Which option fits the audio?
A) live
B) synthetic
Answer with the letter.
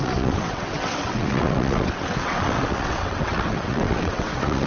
B